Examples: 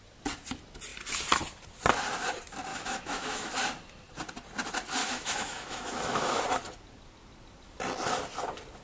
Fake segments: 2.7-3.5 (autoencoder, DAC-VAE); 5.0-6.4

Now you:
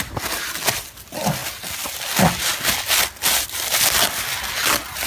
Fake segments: none